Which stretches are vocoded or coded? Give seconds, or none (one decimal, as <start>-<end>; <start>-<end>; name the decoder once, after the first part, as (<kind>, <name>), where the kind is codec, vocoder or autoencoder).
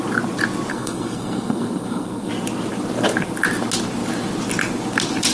0.7-2.3 (codec, SNAC)